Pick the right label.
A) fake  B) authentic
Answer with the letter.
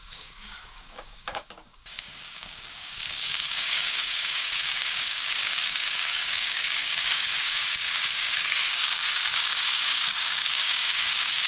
A